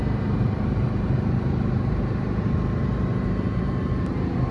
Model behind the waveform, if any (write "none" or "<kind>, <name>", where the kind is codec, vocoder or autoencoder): vocoder, BigVGAN v2